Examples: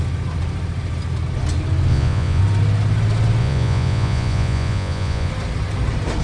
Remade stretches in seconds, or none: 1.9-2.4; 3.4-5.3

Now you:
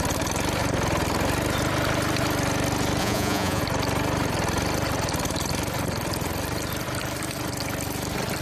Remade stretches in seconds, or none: 3.0-3.6

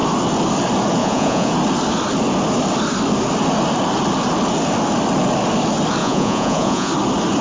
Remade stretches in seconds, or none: 1.0-1.5; 6.0-6.9

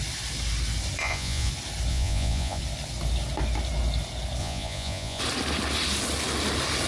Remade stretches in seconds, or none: 1.0-1.5; 1.9-2.6; 4.4-5.2